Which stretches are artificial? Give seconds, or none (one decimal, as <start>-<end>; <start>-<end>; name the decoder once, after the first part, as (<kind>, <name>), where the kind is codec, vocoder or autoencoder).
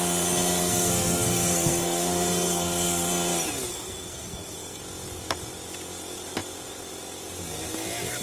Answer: 0.6-3.1 (codec, SNAC); 3.7-4.8